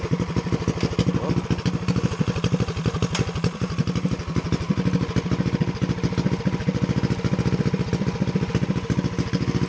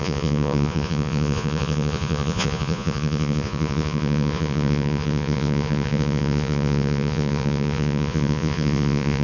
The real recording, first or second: first